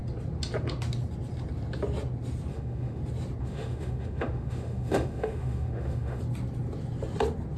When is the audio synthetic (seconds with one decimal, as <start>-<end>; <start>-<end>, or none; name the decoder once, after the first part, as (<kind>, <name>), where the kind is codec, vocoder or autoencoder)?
2.5-3.0 (autoencoder, DAC-VAE); 3.4-6.2